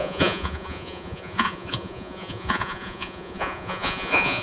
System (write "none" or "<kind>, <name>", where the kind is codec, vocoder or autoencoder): vocoder, Vocos